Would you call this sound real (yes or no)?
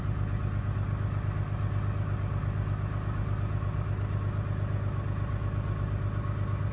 yes